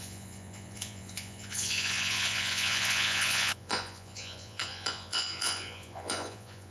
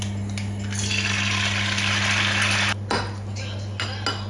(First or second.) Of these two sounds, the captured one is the second